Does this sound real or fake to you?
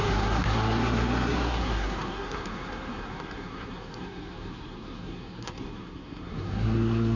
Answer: fake